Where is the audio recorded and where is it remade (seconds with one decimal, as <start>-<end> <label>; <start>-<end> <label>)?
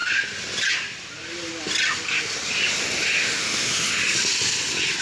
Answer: 0.0-3.2 recorded; 3.2-3.8 remade; 3.8-5.0 recorded